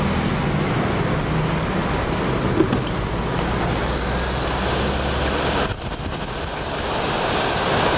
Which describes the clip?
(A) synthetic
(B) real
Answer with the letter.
B